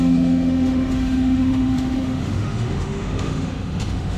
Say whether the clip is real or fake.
fake